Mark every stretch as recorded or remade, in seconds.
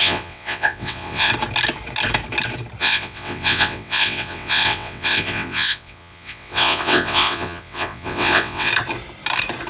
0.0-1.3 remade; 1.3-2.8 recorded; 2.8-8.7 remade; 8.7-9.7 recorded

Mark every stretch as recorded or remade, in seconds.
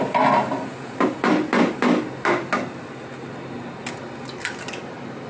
0.0-5.3 recorded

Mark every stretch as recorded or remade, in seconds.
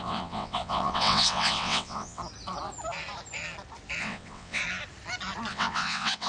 0.0-2.2 remade; 2.2-4.0 recorded; 4.0-4.6 remade; 4.6-5.5 recorded; 5.5-6.3 remade